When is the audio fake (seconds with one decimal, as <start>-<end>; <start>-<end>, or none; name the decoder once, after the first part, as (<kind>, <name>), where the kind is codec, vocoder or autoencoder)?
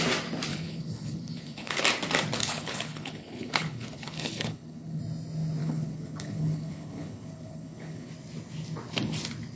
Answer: 0.5-1.8 (codec, HILCodec); 2.4-5.0; 5.6-8.1